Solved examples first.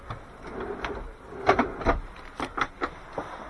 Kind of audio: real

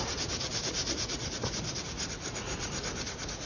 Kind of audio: fake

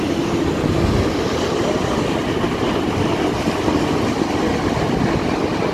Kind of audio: real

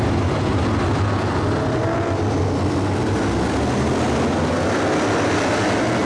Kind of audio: real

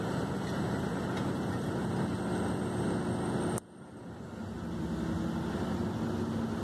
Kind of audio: real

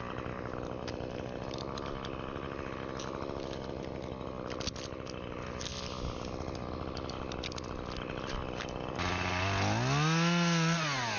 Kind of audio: real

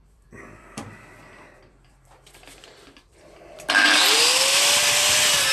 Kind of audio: fake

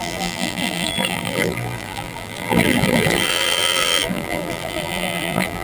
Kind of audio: fake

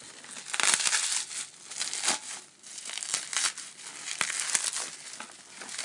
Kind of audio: real